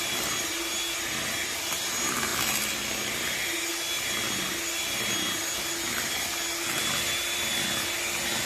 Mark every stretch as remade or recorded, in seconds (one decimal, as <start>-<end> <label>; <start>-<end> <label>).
0.0-8.5 recorded

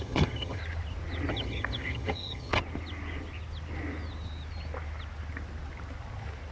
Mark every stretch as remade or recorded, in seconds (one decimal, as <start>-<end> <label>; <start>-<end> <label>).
0.0-0.6 remade; 0.6-1.3 recorded; 1.3-2.6 remade; 2.6-6.5 recorded

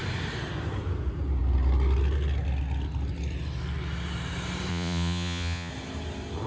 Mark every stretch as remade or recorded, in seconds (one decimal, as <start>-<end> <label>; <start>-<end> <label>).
0.0-4.7 recorded; 4.7-5.7 remade; 5.7-6.5 recorded

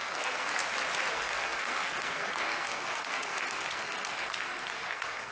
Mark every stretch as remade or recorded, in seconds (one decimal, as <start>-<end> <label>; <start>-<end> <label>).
0.0-0.6 remade; 0.6-1.1 recorded; 1.1-5.3 remade

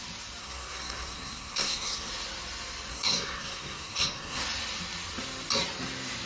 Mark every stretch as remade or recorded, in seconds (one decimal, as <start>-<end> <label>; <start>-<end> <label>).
0.0-0.4 recorded; 0.4-2.1 remade; 2.1-2.9 recorded; 2.9-4.4 remade; 4.4-6.3 recorded

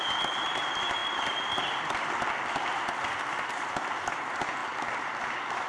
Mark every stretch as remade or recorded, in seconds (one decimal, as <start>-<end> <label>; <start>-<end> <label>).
0.0-1.0 recorded; 1.0-3.7 remade; 3.7-5.7 recorded

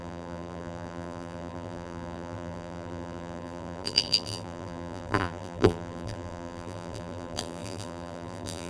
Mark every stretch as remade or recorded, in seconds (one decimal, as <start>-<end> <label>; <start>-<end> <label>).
0.0-8.7 remade

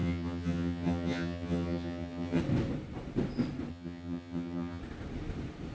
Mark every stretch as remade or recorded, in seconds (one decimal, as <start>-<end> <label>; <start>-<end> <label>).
0.0-2.4 remade; 2.4-3.7 recorded; 3.7-4.8 remade; 4.8-5.7 recorded